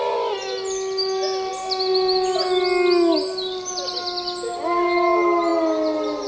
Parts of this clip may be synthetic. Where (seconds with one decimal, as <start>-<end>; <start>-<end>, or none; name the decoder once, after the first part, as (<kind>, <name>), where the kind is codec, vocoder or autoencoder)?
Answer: none